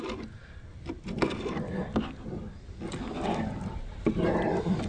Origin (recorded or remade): recorded